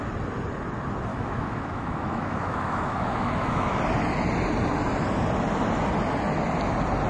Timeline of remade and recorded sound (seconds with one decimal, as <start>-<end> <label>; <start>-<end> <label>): 0.0-1.1 recorded; 1.1-3.8 remade; 3.8-7.1 recorded